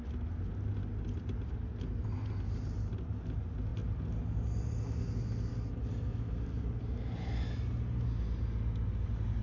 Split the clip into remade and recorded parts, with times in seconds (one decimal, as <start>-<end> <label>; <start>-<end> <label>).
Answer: 0.0-9.4 recorded

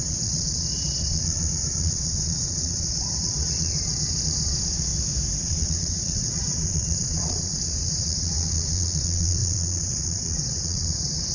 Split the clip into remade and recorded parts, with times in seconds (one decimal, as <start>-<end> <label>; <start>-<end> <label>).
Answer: 0.0-4.9 remade; 4.9-5.4 recorded; 5.4-11.3 remade

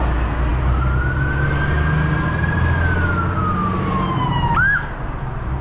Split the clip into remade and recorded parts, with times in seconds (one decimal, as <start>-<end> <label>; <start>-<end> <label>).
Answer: 0.0-5.6 recorded

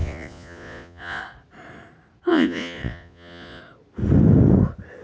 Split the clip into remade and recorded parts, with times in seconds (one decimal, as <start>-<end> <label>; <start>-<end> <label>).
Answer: 0.0-1.2 remade; 1.2-2.3 recorded; 2.3-3.6 remade; 3.6-5.0 recorded

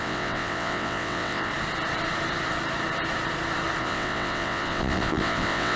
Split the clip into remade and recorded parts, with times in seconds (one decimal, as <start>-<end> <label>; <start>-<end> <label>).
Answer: 0.0-1.5 remade; 1.5-3.8 recorded; 3.8-5.8 remade

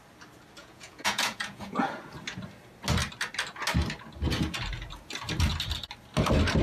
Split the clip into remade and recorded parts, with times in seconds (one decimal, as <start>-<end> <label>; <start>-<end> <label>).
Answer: 0.0-0.6 recorded; 0.6-2.0 remade; 2.0-6.6 recorded

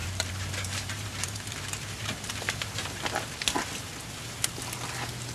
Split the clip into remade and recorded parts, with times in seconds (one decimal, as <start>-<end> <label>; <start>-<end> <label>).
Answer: 0.0-3.0 remade; 3.0-5.3 recorded

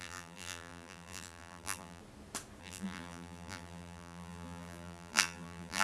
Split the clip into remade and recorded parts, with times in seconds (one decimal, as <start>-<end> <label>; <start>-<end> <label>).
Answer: 0.0-2.0 remade; 2.0-2.6 recorded; 2.6-5.8 remade